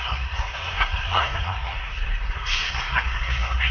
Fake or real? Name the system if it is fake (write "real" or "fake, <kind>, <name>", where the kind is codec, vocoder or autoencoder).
fake, codec, SNAC